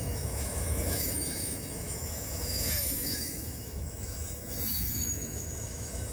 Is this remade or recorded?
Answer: remade